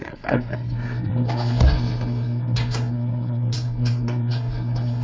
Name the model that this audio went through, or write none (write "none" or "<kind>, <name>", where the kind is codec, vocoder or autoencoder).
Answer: codec, SNAC